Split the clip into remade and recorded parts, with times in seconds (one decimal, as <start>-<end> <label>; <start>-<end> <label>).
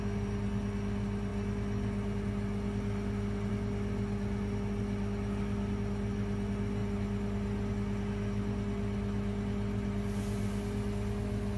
0.0-11.6 recorded